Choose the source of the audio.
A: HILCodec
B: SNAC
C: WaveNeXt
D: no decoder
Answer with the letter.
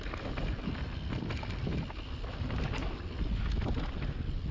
D